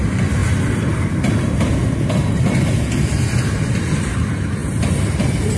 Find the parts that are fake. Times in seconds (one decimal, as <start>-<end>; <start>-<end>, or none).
none